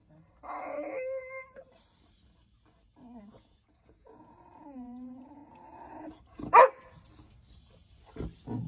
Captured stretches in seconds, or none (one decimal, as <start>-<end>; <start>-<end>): 0.0-3.2; 5.4-8.7